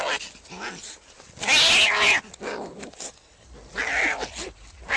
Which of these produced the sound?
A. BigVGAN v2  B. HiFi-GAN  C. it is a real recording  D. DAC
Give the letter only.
C